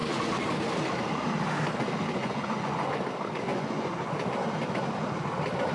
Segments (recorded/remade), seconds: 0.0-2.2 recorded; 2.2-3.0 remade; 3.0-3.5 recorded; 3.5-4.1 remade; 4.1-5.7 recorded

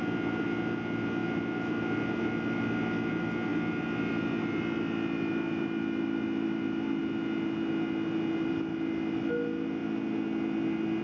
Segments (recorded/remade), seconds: 0.0-11.0 recorded